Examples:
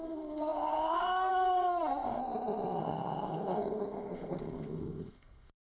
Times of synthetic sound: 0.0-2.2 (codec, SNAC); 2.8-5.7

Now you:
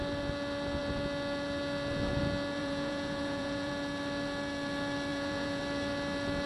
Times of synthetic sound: 2.6-3.7 (vocoder, Vocos); 5.1-5.6

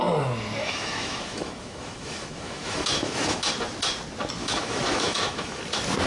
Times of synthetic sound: 0.6-3.5 (autoencoder, DAC-VAE); 4.4-5.6